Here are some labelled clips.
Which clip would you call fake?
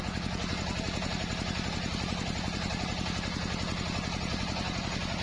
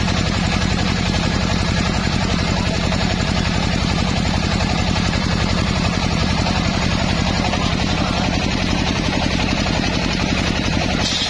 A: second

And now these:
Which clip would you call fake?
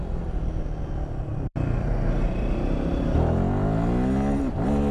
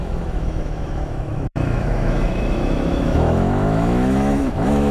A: second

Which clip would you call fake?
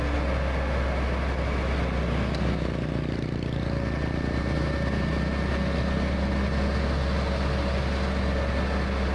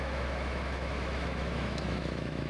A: second